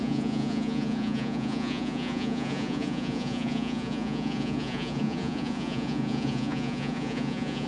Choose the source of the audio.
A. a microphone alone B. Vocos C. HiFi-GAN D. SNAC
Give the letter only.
B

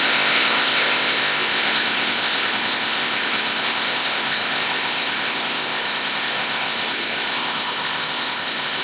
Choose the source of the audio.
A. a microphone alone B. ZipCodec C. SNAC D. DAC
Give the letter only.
B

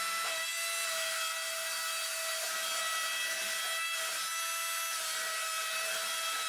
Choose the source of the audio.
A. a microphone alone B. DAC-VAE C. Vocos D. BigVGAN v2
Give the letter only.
A